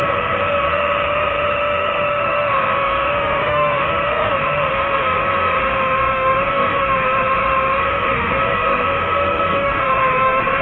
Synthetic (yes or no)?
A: yes